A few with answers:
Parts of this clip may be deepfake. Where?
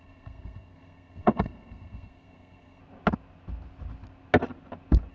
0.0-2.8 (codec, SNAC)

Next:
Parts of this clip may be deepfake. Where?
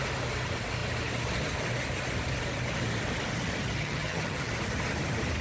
3.8-4.5 (vocoder, HiFi-GAN)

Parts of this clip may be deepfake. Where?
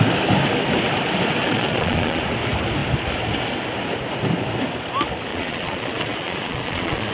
1.4-2.2 (vocoder, Vocos); 5.3-7.1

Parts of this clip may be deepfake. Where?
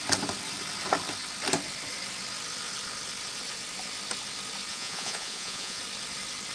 4.7-5.8 (vocoder, Vocos)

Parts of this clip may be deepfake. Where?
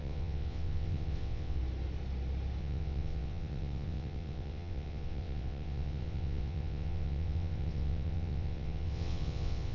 0.0-1.6 (vocoder, WaveNeXt); 2.6-9.7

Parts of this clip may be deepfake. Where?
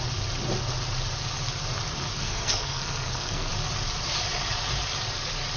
2.1-3.5 (codec, SNAC)